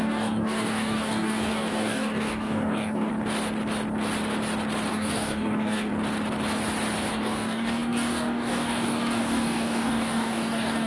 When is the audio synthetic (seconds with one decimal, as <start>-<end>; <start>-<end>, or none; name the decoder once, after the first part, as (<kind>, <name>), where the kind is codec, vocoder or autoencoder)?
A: 0.0-3.1 (codec, DAC); 4.9-5.9; 7.1-10.9